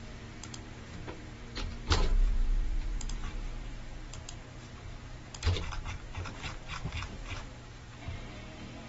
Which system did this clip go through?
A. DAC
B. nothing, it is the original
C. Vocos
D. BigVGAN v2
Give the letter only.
D